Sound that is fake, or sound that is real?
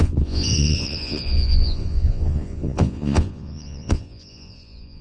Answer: fake